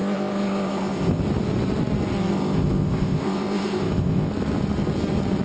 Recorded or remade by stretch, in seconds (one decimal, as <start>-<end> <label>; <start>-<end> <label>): 0.0-1.2 remade; 1.2-2.3 recorded; 2.3-4.3 remade; 4.3-5.4 recorded